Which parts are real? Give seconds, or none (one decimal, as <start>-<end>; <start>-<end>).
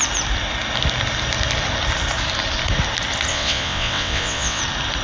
0.0-3.3; 4.6-5.0